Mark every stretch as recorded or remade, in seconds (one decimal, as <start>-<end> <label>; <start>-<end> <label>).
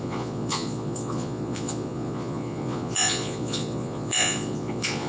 0.0-5.1 remade